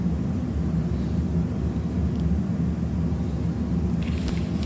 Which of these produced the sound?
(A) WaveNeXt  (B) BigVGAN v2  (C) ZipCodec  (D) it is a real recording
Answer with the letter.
D